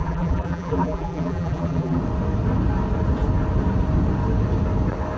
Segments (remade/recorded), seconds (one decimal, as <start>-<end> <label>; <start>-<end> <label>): 0.0-2.0 remade; 2.0-5.2 recorded